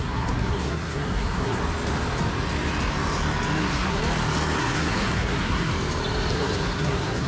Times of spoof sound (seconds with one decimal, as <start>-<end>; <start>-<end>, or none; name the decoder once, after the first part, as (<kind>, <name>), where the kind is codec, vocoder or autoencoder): 0.0-1.6 (codec, SNAC); 3.6-4.0; 4.6-5.7; 6.3-7.3